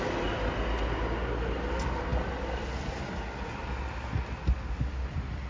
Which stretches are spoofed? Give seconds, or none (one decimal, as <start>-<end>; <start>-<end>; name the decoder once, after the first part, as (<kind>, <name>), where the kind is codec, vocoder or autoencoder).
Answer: none